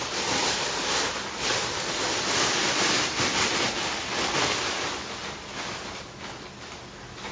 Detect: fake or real real